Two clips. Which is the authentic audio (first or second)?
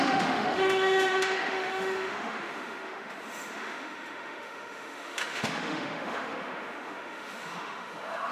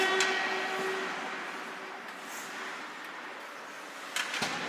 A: second